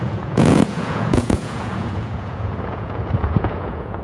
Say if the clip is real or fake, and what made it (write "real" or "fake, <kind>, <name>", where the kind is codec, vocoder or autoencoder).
fake, vocoder, Vocos